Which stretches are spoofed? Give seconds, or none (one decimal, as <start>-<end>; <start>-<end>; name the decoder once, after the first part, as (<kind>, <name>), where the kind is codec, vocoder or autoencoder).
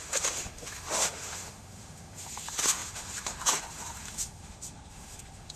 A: 0.0-5.6 (autoencoder, DAC-VAE)